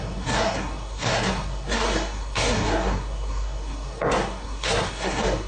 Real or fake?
fake